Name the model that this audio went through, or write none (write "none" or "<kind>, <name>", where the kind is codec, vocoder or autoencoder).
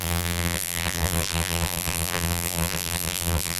vocoder, BigVGAN v2